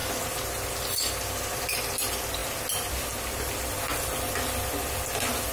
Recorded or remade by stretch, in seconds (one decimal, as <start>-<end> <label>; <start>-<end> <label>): 0.0-5.5 recorded